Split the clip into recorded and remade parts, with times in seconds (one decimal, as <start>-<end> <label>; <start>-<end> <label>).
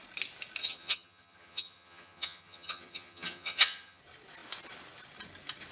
0.0-0.6 recorded; 0.6-4.0 remade; 4.0-5.7 recorded